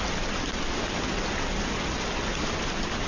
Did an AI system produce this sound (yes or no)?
no